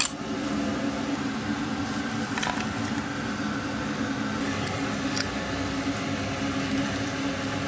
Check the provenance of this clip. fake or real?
real